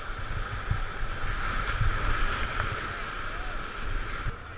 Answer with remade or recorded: recorded